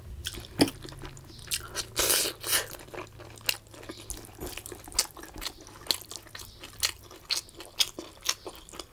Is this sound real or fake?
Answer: real